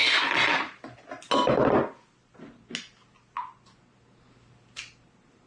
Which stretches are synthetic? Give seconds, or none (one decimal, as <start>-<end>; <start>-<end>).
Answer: none

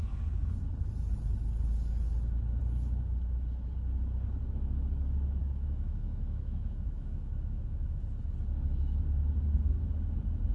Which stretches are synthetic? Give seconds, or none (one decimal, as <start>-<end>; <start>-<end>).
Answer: 5.4-8.0